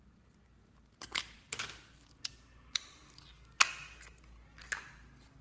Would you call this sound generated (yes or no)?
no